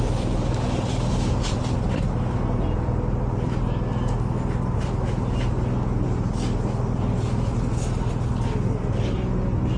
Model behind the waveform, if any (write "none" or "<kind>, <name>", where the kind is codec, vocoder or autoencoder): none